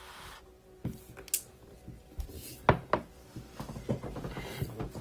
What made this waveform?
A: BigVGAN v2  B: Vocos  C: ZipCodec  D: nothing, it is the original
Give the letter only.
D